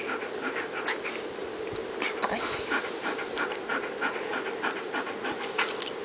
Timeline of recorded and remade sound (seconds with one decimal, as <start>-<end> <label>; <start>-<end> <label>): 0.0-6.0 recorded